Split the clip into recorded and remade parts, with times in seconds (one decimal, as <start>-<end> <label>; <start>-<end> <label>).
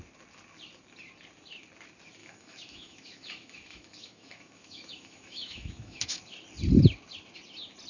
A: 0.0-2.2 recorded; 2.2-6.2 remade; 6.2-7.9 recorded